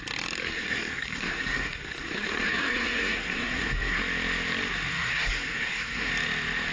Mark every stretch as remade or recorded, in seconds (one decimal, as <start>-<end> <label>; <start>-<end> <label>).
0.0-0.4 recorded; 0.4-4.0 remade; 4.0-4.9 recorded; 4.9-6.1 remade; 6.1-6.7 recorded